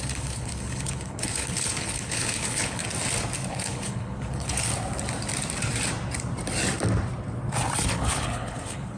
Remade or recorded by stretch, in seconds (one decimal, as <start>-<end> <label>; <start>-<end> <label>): 0.0-2.8 remade; 2.8-3.5 recorded; 3.5-4.7 remade; 4.7-7.8 recorded; 7.8-9.0 remade